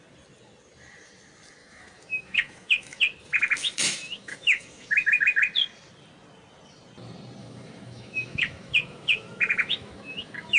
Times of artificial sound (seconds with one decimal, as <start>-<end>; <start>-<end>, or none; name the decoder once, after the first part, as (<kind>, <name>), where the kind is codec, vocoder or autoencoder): 1.6-3.0 (autoencoder, DAC-VAE); 3.6-5.2; 7.4-10.6